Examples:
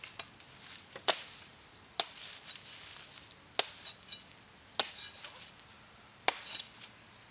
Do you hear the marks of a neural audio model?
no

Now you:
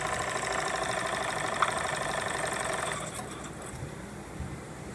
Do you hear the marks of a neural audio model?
no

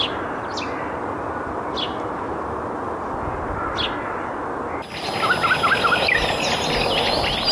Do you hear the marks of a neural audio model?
no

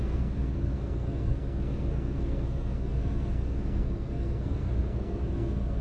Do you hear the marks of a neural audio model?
yes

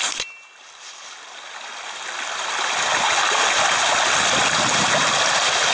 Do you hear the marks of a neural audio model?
no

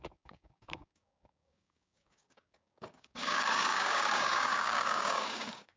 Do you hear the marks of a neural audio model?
yes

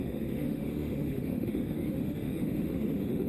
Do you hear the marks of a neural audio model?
yes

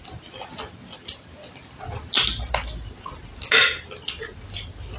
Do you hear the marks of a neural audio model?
no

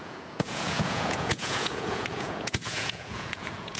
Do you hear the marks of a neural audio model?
yes